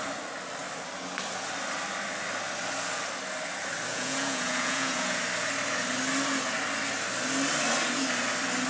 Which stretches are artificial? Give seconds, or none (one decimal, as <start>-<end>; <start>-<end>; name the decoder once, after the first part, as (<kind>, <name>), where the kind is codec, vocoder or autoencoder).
3.9-5.2 (vocoder, Vocos)